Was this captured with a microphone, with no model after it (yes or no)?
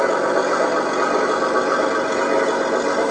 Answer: yes